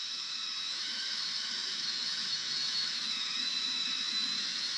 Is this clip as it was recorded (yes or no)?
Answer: no